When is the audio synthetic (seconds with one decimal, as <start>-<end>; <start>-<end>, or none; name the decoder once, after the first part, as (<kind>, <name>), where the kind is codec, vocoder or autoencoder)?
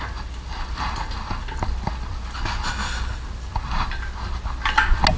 none